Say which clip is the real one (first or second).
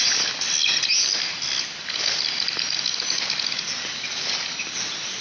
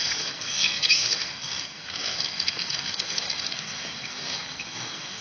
first